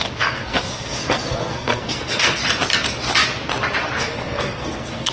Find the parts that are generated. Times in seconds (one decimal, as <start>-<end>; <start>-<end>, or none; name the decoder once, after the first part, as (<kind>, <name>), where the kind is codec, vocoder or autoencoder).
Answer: 0.0-2.4 (codec, SNAC); 4.0-5.1